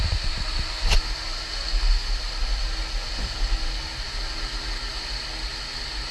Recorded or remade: recorded